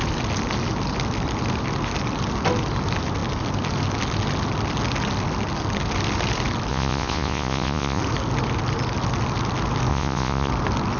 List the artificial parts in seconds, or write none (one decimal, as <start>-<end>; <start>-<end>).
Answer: 6.7-8.0; 9.9-10.5